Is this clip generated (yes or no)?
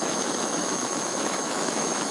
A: yes